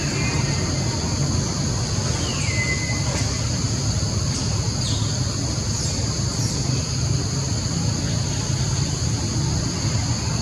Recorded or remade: recorded